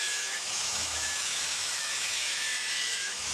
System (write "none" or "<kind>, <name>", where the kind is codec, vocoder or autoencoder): autoencoder, DAC-VAE